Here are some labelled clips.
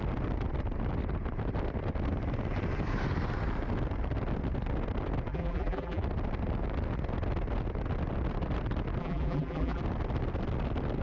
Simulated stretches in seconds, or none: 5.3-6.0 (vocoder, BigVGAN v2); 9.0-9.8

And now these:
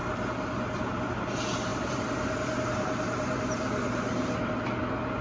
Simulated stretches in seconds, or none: 1.7-4.6 (vocoder, BigVGAN v2)

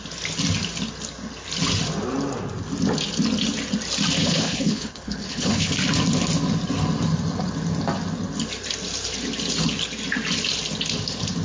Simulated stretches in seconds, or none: 4.2-5.7 (codec, HILCodec)

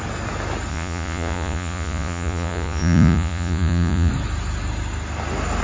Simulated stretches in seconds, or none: 0.7-4.1 (vocoder, Vocos)